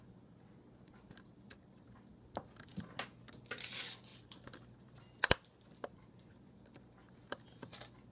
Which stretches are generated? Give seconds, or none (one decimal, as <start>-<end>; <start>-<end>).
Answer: 1.3-2.1; 4.1-7.4

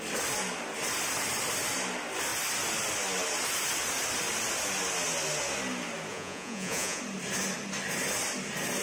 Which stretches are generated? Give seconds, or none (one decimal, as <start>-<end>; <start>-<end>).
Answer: 6.1-7.0

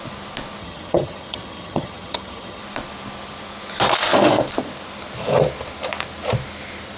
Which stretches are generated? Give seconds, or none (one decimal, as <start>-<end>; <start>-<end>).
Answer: 0.6-2.6

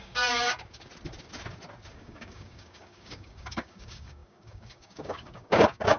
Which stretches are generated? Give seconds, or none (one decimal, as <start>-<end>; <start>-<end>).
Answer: 0.0-0.9; 1.9-6.0

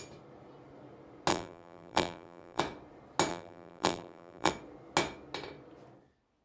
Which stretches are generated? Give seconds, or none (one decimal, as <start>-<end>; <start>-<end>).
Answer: 1.3-2.6; 3.3-4.5

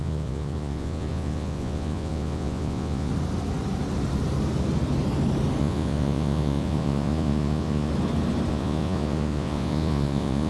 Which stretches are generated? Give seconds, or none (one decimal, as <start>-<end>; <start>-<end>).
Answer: 0.0-3.1; 5.6-7.9; 8.5-10.5

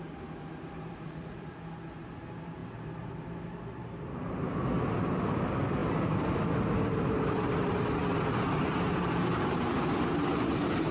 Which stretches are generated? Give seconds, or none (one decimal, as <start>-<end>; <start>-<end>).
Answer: 0.9-1.5